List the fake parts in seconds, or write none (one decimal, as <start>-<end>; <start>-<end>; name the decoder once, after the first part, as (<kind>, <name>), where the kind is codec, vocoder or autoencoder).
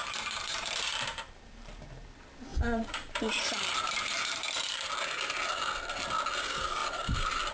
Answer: 0.0-1.8 (vocoder, BigVGAN v2); 2.5-4.9; 6.8-7.5